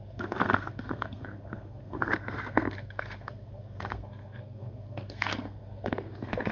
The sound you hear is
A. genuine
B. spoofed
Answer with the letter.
B